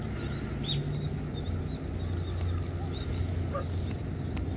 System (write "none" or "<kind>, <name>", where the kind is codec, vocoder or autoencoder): none